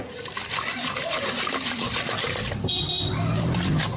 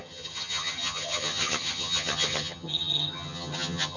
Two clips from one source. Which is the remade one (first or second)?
second